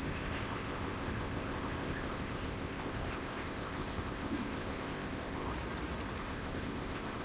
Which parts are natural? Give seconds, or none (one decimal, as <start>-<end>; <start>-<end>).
5.5-6.2